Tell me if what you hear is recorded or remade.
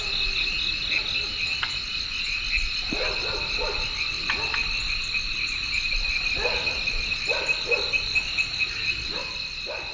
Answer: recorded